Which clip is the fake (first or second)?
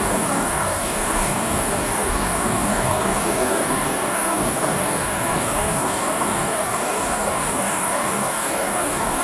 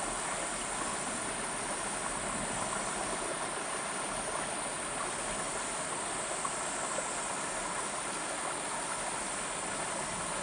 first